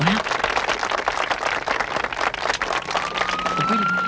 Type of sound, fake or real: real